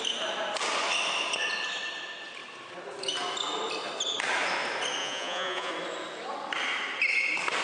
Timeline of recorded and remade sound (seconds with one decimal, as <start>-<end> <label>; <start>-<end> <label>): 0.0-5.0 recorded; 5.0-5.7 remade; 5.7-7.6 recorded